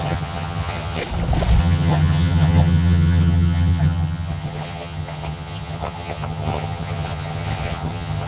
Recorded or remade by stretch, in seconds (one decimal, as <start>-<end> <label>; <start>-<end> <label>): 0.0-1.0 remade; 1.0-1.6 recorded; 1.6-8.3 remade